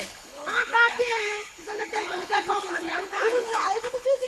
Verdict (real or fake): fake